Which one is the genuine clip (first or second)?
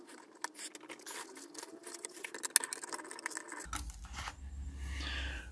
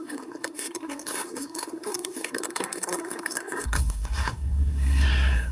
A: first